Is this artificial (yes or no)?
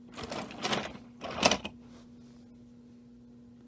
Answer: no